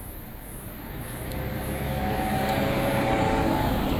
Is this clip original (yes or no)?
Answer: no